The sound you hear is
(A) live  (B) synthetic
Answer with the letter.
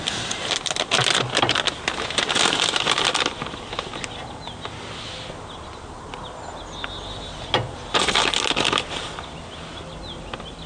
A